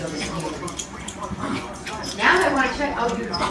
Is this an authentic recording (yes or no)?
no